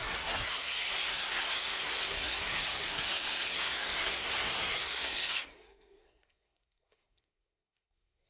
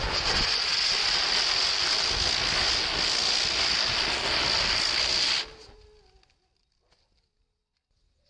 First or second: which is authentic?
second